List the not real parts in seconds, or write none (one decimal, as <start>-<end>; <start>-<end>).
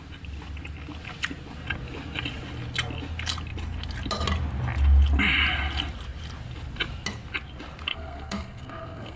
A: 7.9-9.2